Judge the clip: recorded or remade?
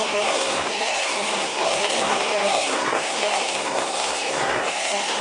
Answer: remade